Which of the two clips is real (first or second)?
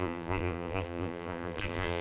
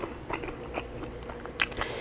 second